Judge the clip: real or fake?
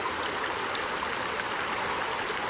real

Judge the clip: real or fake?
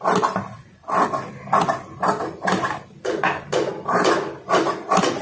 real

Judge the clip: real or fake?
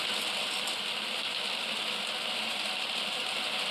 real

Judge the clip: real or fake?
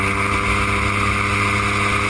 real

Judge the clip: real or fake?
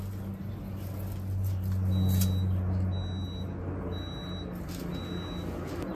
real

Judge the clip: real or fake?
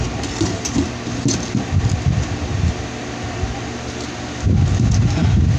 real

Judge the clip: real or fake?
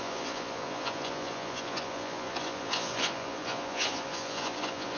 fake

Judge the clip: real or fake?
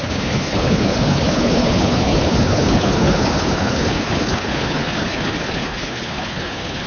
fake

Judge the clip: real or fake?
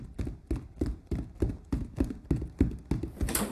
real